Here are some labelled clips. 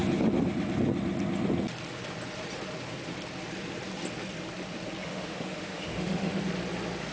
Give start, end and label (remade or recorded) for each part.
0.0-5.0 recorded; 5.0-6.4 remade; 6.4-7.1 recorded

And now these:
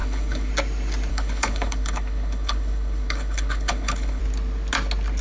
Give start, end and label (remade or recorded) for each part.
0.0-0.5 remade; 0.5-1.1 recorded; 1.1-4.2 remade; 4.2-5.2 recorded

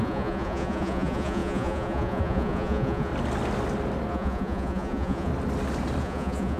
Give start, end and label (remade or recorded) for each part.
0.0-3.1 remade; 3.1-4.1 recorded; 4.1-5.3 remade; 5.3-6.0 recorded; 6.0-6.6 remade

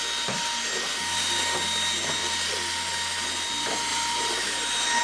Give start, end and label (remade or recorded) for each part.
0.0-2.2 recorded; 2.2-3.3 remade; 3.3-3.9 recorded; 3.9-5.0 remade

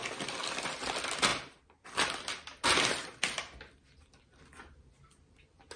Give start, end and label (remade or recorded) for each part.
0.0-5.8 recorded

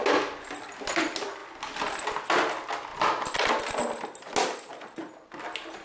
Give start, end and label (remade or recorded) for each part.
0.0-5.8 recorded